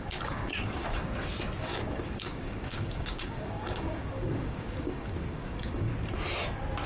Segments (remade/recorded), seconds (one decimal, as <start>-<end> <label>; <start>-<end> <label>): 0.0-1.1 remade; 1.1-1.6 recorded; 1.6-5.9 remade; 5.9-6.9 recorded